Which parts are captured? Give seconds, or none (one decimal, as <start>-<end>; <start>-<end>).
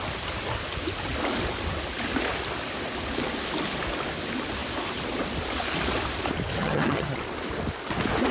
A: 0.0-6.6; 7.2-8.3